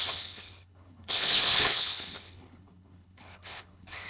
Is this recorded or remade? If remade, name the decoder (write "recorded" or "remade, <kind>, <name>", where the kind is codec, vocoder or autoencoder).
remade, codec, HILCodec